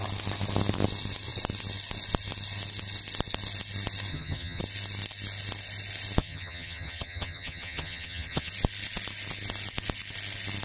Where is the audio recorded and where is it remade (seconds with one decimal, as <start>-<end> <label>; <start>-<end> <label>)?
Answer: 0.0-4.1 recorded; 4.1-4.6 remade; 4.6-6.2 recorded; 6.2-8.5 remade; 8.5-10.6 recorded